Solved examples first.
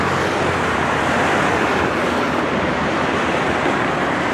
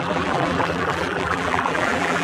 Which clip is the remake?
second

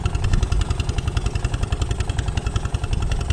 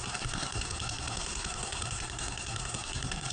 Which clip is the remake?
second